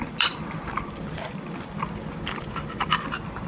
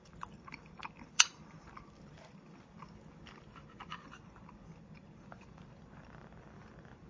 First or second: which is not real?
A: second